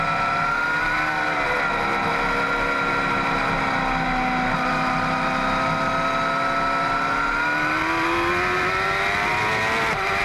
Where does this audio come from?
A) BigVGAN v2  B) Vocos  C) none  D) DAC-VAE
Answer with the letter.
C